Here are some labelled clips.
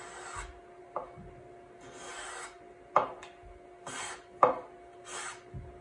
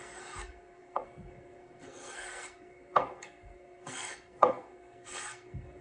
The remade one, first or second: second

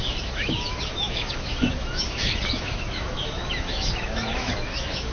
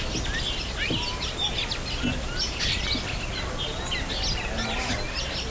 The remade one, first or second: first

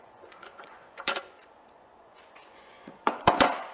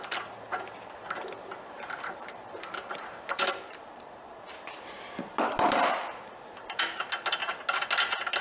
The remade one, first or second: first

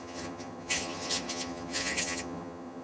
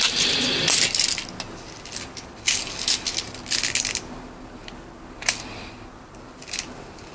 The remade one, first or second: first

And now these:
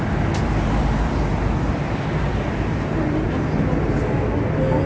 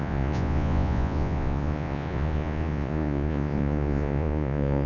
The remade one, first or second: second